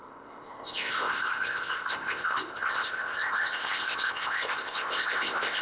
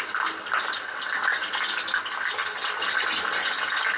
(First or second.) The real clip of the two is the second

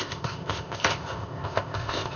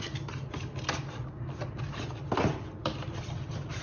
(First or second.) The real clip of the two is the second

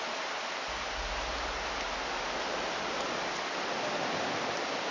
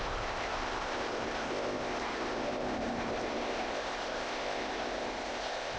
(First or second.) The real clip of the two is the first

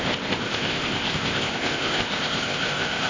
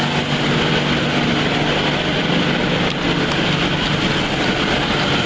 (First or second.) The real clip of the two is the second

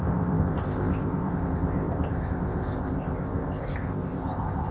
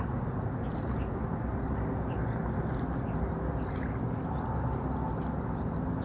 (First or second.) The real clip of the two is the second